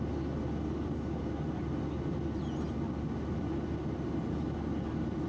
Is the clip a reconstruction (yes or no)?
no